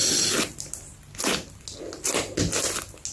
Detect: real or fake real